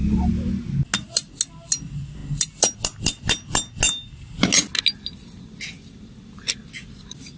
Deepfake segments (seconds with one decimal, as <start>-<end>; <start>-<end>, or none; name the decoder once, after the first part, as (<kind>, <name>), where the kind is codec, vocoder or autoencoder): none